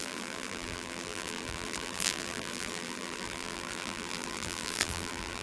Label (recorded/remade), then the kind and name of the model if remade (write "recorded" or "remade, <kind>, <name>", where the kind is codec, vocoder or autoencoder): remade, vocoder, BigVGAN v2